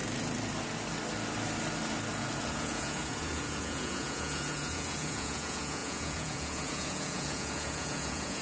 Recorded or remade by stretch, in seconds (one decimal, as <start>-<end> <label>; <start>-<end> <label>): 0.0-2.5 recorded; 2.5-8.4 remade